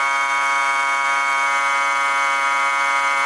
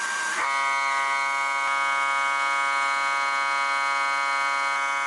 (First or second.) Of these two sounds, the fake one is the first